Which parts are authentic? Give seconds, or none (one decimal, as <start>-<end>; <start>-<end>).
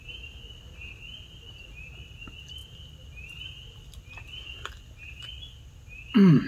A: 0.0-6.5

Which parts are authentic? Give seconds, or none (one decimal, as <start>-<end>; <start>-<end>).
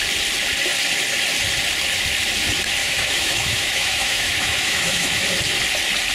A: 0.0-2.8; 5.2-6.1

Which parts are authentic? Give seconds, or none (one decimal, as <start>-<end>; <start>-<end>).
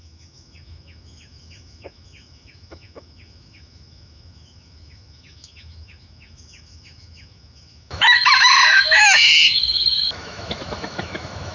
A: none